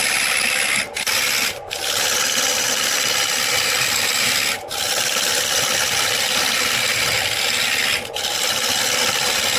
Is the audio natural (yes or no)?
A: yes